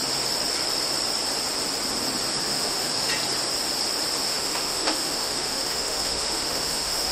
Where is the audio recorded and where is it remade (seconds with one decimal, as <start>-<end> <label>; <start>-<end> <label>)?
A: 0.0-2.5 recorded; 2.5-3.1 remade; 3.1-4.2 recorded; 4.2-7.1 remade

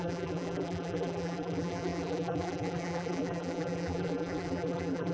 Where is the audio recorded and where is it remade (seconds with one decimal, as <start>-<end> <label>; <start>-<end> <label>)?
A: 0.0-5.1 remade

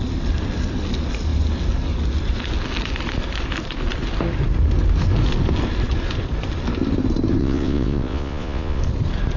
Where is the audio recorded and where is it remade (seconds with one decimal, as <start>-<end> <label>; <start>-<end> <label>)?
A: 0.0-7.4 recorded; 7.4-8.8 remade; 8.8-9.4 recorded

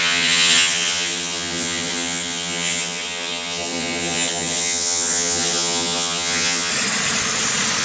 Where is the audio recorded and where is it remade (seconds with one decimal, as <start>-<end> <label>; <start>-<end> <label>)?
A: 0.0-6.7 remade; 6.7-7.8 recorded

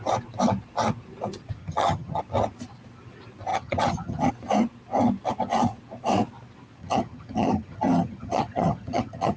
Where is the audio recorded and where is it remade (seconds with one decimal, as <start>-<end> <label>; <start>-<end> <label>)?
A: 0.0-1.6 recorded; 1.6-2.2 remade; 2.2-3.5 recorded; 3.5-4.3 remade; 4.3-6.8 recorded; 6.8-9.4 remade